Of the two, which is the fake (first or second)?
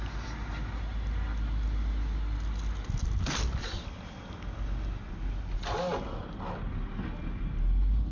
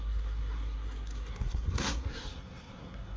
second